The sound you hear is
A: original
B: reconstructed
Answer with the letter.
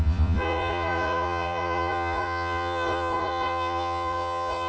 B